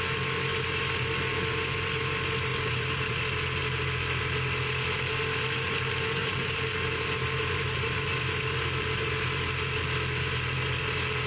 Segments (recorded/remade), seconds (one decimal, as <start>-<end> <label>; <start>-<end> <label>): 0.0-6.2 recorded; 6.2-8.3 remade; 8.3-11.3 recorded